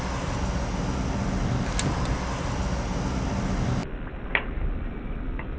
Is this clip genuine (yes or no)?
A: yes